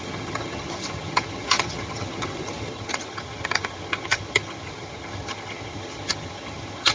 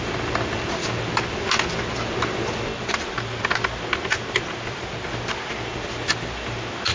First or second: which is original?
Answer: second